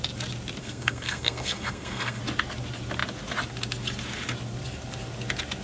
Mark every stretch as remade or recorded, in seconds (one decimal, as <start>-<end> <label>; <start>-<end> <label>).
0.0-0.6 recorded; 0.6-2.2 remade; 2.2-5.6 recorded